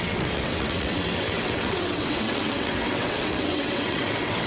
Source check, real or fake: fake